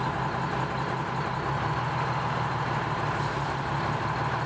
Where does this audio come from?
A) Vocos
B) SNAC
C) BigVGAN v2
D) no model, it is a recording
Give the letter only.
D